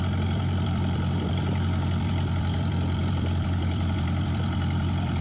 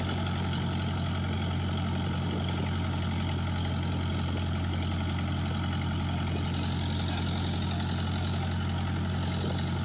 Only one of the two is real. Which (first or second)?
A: second